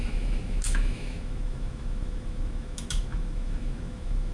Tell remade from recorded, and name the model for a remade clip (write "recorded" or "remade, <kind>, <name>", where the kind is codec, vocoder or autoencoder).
remade, autoencoder, DAC-VAE